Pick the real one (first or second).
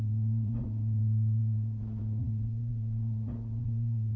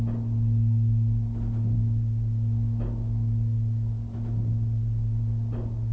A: second